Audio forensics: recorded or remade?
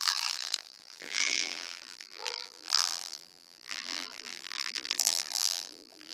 remade